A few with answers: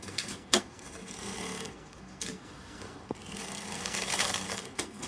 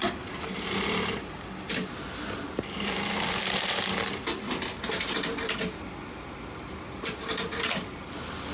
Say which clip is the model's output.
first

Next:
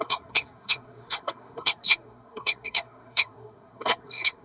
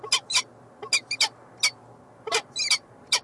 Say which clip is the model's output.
first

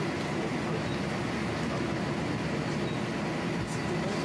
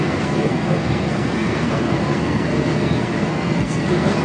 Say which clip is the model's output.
second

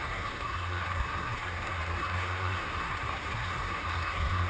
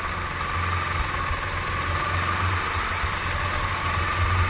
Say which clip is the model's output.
first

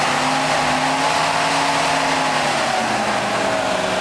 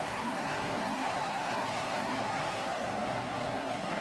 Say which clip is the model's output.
second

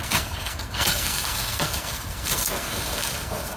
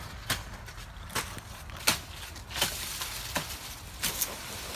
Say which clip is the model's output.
first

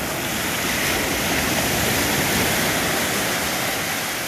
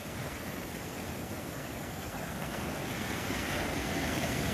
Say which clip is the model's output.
second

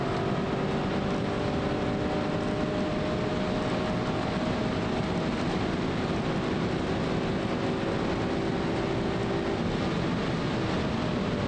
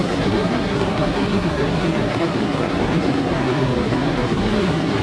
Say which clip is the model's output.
second